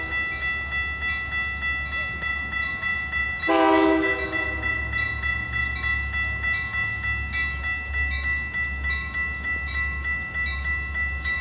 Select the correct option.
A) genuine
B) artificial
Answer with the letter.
A